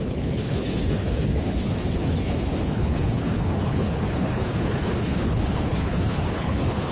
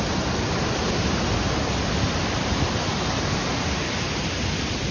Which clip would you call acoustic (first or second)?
second